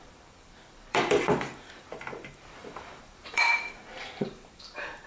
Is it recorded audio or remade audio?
remade